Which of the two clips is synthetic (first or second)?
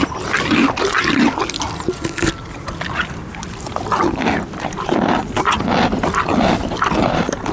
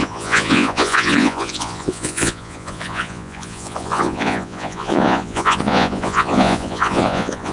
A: second